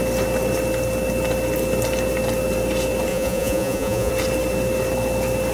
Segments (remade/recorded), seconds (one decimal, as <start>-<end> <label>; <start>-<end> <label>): 0.0-3.1 recorded; 3.1-4.1 remade; 4.1-5.5 recorded